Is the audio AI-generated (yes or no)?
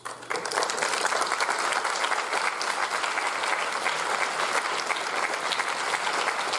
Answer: no